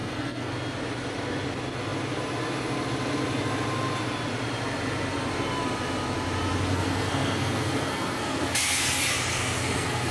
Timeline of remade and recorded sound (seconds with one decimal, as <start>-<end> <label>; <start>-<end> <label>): 0.0-0.5 remade; 0.5-6.7 recorded; 6.7-8.9 remade; 8.9-9.3 recorded; 9.3-10.1 remade